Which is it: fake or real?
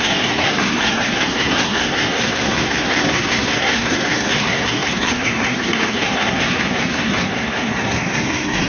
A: fake